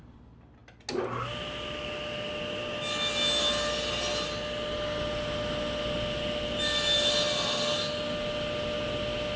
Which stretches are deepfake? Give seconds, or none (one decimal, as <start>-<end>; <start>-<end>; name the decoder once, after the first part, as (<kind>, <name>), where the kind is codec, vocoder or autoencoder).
none